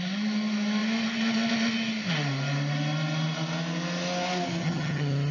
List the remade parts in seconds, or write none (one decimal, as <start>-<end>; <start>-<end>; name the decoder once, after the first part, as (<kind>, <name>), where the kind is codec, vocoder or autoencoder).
4.6-5.3 (vocoder, HiFi-GAN)